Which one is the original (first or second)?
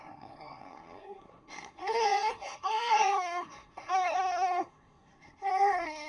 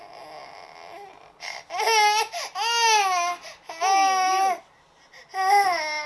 second